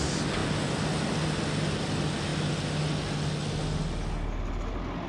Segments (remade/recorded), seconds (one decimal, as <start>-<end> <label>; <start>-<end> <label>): 0.0-5.1 recorded